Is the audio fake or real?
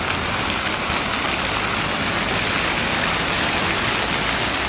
real